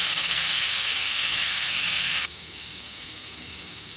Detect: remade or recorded remade